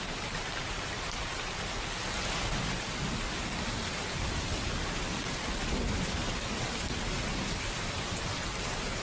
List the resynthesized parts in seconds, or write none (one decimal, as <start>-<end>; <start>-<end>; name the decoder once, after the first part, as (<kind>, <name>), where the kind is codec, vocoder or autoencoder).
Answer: none